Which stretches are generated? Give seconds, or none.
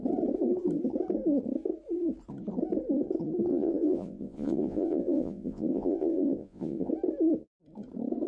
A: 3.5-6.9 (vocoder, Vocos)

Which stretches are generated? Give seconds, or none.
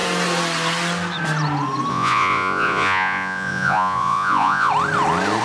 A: 1.9-4.7 (vocoder, Vocos)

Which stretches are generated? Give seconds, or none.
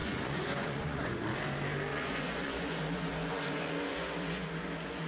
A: 0.0-1.2 (vocoder, Vocos); 1.9-5.1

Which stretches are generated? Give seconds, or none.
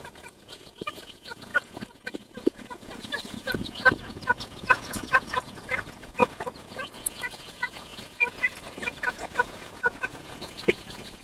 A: 0.0-11.2 (vocoder, Vocos)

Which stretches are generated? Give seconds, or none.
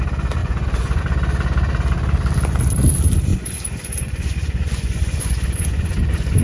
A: 0.4-1.0 (vocoder, Vocos); 3.3-6.4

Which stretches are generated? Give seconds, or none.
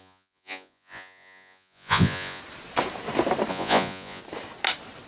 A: 0.0-2.4 (vocoder, Vocos); 3.5-4.2